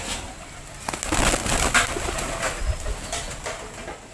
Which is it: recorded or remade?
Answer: recorded